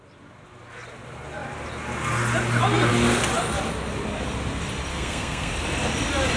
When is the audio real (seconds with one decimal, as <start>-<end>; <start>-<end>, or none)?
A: 0.0-4.9; 5.5-6.4